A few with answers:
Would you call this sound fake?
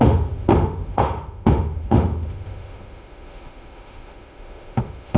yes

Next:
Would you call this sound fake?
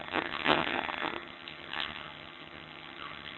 yes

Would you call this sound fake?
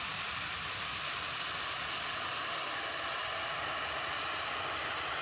no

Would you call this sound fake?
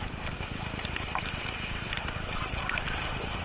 no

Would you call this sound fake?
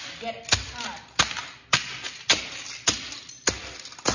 no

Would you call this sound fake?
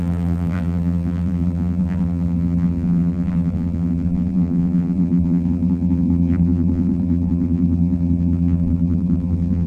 yes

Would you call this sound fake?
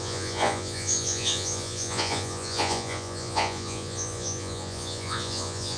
yes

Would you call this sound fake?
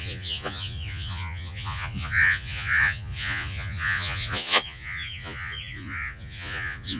yes